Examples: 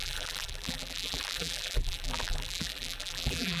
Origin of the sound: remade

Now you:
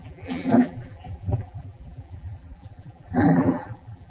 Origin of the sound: remade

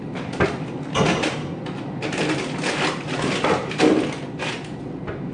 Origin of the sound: recorded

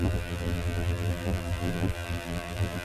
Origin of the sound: remade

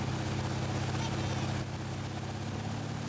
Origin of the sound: recorded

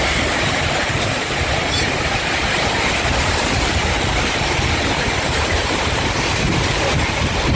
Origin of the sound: remade